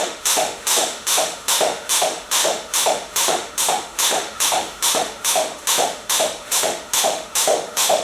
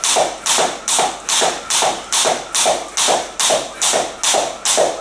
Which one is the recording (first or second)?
second